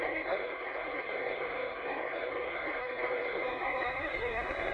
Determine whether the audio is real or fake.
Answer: fake